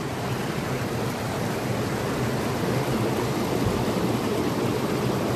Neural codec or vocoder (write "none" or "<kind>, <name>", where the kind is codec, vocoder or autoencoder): none